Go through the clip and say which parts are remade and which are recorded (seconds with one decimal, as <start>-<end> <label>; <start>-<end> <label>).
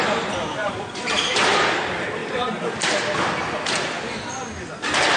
0.0-0.6 recorded; 0.6-1.8 remade; 1.8-5.2 recorded